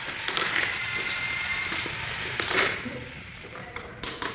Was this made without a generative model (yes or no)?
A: no